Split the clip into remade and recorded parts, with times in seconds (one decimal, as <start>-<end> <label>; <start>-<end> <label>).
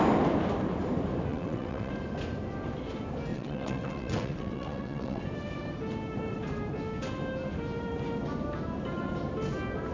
0.0-1.3 recorded; 1.3-1.9 remade; 1.9-3.3 recorded; 3.3-5.2 remade; 5.2-9.9 recorded